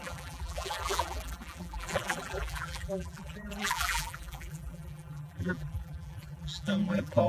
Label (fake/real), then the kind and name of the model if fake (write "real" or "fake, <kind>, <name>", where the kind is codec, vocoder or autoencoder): fake, vocoder, BigVGAN v2